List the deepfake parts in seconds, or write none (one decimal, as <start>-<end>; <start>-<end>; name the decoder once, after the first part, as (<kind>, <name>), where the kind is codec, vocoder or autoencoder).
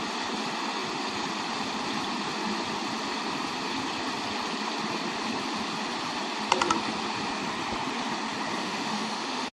8.6-9.5 (autoencoder, DAC-VAE)